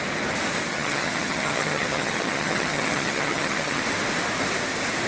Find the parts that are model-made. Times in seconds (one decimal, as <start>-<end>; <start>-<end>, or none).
0.7-3.8